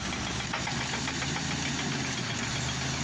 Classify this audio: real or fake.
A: real